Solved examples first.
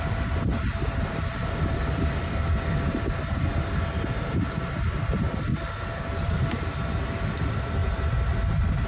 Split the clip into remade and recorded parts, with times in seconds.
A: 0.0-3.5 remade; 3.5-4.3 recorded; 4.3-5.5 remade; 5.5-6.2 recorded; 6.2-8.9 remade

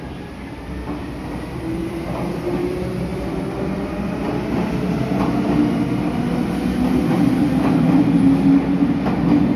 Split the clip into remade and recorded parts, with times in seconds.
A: 0.0-9.6 recorded

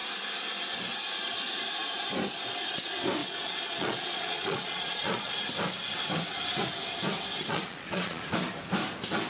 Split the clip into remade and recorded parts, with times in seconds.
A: 0.0-3.2 recorded; 3.2-5.3 remade; 5.3-7.5 recorded; 7.5-8.2 remade; 8.2-9.3 recorded

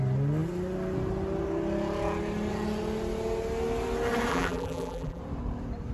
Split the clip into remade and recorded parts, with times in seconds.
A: 0.0-4.3 recorded; 4.3-5.2 remade; 5.2-5.9 recorded